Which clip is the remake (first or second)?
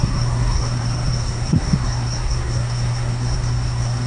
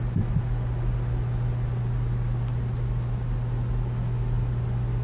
first